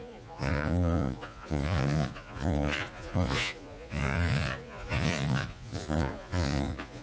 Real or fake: fake